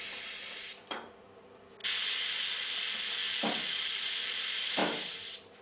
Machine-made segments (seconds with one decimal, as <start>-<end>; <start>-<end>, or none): none